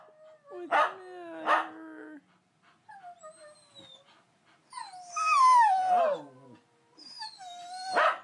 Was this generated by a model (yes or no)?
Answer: no